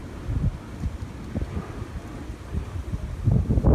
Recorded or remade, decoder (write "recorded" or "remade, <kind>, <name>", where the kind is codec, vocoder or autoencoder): recorded